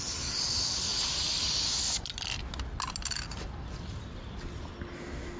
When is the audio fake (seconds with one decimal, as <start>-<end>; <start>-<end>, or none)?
none